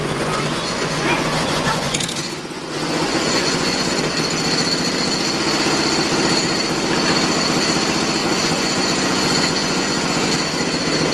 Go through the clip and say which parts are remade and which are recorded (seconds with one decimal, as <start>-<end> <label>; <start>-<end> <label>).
0.0-3.9 remade; 3.9-8.2 recorded; 8.2-10.3 remade; 10.3-11.1 recorded